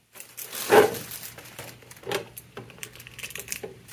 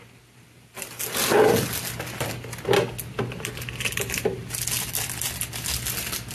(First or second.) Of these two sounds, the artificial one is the first